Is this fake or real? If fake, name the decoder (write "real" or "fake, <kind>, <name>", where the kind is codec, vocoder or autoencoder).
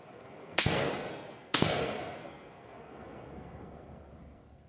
fake, codec, SNAC